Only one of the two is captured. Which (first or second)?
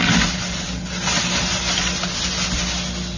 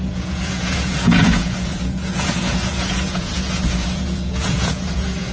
first